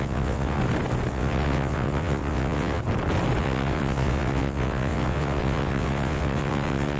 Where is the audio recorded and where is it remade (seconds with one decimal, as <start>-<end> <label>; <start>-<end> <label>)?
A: 0.0-0.6 remade; 0.6-1.1 recorded; 1.1-2.8 remade; 2.8-3.4 recorded; 3.4-7.0 remade